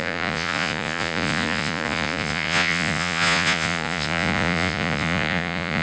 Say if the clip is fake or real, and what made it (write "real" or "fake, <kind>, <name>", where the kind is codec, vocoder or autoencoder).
fake, vocoder, Vocos